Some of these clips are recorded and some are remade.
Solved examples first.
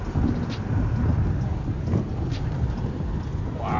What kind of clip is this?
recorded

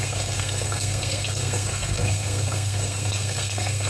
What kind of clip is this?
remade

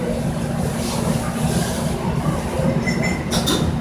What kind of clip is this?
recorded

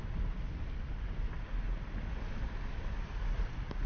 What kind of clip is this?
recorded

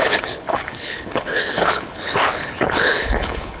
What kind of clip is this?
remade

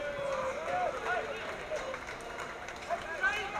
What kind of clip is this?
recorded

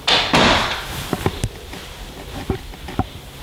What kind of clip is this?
recorded